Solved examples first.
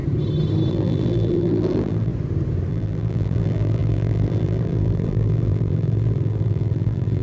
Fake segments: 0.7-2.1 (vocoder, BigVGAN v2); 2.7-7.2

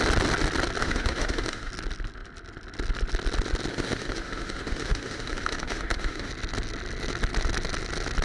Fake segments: 0.8-1.7 (autoencoder, DAC-VAE); 3.7-6.3

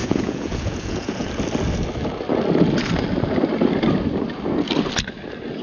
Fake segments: 0.0-1.3 (vocoder, Vocos)

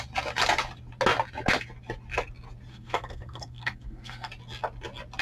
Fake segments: 2.7-4.3 (codec, SNAC)

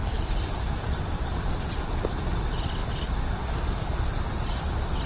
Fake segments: 0.0-1.4 (vocoder, BigVGAN v2)

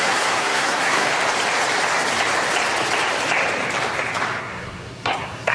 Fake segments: 0.0-1.1 (codec, SNAC); 4.4-5.5

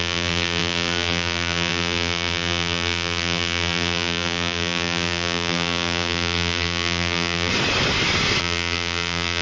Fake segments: 0.0-7.5 (vocoder, BigVGAN v2); 8.4-9.4

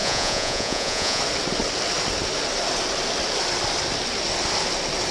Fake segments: 0.0-1.2 (vocoder, Vocos)